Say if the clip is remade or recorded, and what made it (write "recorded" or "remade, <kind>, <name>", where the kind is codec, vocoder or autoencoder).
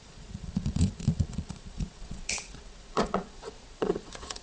remade, vocoder, Vocos